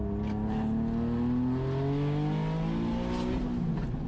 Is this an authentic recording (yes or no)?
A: yes